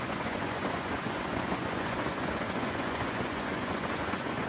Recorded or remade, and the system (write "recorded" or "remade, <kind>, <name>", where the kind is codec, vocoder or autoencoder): remade, vocoder, Vocos